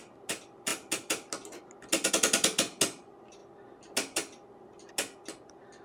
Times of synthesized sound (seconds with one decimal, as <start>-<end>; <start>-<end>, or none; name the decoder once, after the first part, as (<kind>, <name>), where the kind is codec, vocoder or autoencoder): none